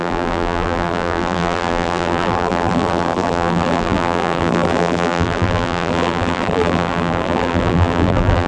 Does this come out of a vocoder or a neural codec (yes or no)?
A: yes